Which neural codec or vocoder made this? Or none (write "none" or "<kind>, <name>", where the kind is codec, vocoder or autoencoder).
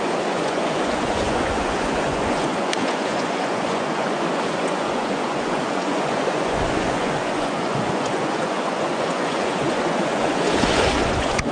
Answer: vocoder, Vocos